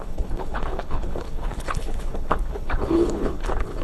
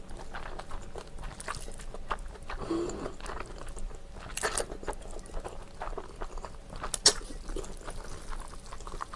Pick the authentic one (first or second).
second